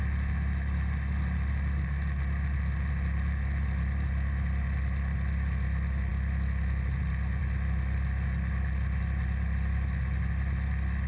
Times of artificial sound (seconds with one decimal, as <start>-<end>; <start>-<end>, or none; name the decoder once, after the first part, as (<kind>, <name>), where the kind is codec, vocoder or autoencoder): none